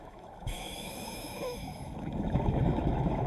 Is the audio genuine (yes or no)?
no